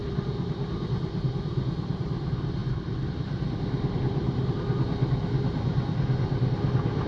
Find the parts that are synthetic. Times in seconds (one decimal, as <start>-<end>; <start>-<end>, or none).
0.0-0.8; 2.6-4.6